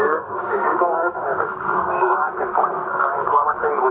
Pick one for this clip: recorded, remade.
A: remade